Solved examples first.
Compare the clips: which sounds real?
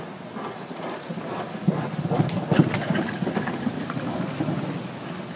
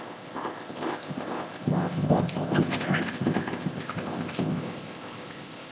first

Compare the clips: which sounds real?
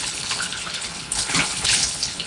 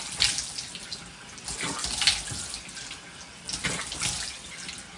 second